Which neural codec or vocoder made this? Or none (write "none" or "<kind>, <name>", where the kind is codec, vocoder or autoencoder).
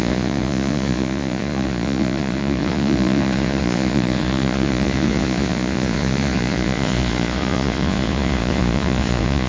vocoder, Vocos